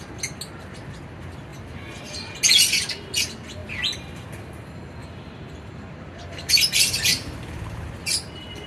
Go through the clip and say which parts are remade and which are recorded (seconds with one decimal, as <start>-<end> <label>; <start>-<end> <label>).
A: 0.0-1.5 recorded; 1.5-2.3 remade; 2.3-5.0 recorded; 5.0-8.7 remade